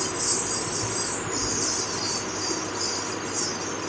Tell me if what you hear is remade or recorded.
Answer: recorded